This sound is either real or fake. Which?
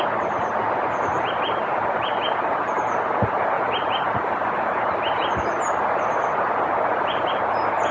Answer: real